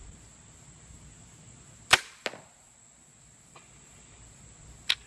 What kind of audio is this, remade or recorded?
recorded